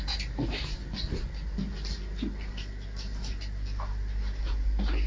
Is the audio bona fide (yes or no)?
yes